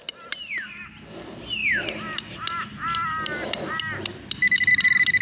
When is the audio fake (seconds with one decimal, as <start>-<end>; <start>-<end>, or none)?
none